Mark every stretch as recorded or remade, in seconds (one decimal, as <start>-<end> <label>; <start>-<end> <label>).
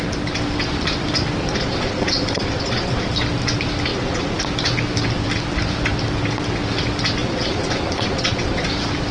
0.0-1.4 recorded; 1.4-3.1 remade; 3.1-3.9 recorded; 3.9-4.4 remade; 4.4-7.2 recorded; 7.2-8.7 remade; 8.7-9.1 recorded